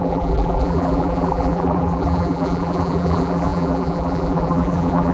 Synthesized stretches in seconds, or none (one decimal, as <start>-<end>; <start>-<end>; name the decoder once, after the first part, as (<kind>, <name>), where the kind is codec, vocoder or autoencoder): 0.0-5.1 (vocoder, BigVGAN v2)